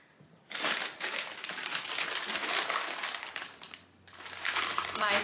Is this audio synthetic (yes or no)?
yes